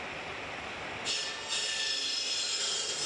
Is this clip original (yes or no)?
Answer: yes